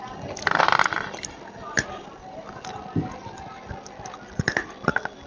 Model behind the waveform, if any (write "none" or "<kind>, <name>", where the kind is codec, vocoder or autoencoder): none